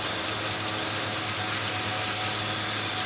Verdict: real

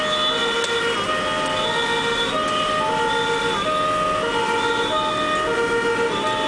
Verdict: real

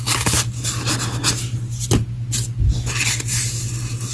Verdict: real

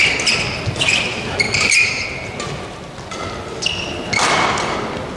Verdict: real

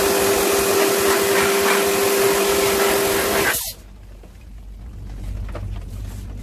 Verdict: real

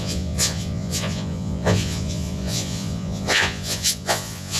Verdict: fake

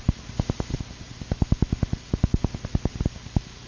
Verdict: real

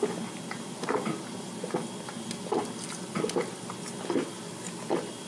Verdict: real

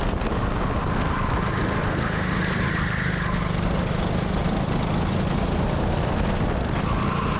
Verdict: real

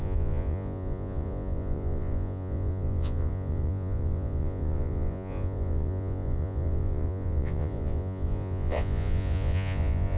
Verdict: fake